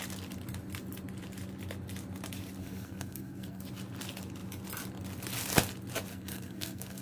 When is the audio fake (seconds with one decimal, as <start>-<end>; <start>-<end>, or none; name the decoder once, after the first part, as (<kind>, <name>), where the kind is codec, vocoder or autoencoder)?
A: 2.6-3.6 (codec, SNAC); 6.1-7.0